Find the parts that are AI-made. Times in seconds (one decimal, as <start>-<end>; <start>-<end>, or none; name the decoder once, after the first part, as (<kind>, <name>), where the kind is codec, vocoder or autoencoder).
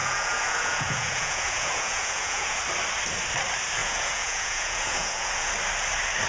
0.0-2.6 (vocoder, Vocos); 3.8-5.5